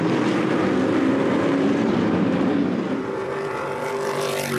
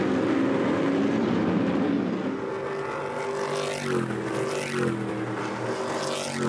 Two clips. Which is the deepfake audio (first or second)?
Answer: first